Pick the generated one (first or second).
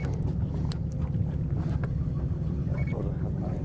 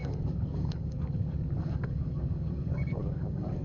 second